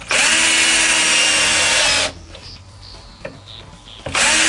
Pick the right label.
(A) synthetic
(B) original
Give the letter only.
B